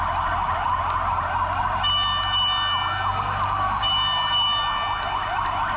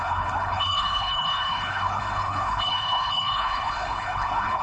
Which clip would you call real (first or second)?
first